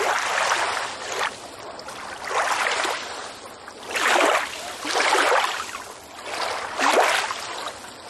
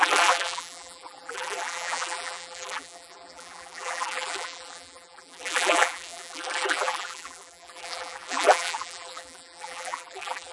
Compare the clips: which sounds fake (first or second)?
second